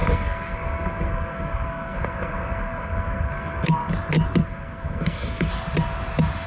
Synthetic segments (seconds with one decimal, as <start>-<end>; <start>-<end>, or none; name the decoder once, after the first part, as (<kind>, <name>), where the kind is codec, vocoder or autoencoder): 0.0-3.9 (codec, SNAC); 4.4-5.5